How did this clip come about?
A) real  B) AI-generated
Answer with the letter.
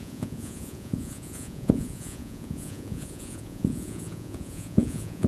B